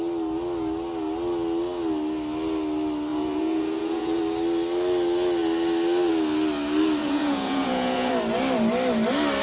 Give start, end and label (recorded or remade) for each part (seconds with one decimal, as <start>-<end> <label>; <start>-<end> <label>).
0.0-3.1 recorded; 3.1-4.2 remade; 4.2-7.0 recorded; 7.0-8.1 remade; 8.1-9.4 recorded